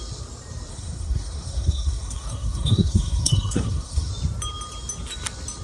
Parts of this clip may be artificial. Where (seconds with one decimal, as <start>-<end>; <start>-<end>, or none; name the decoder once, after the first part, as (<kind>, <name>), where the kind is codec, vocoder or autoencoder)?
0.7-4.1 (codec, SNAC)